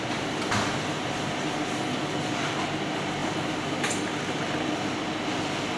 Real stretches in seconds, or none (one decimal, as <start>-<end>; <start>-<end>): 0.0-5.8